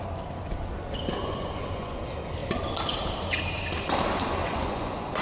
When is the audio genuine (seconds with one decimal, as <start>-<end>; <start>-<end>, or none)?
0.0-1.2; 2.0-4.4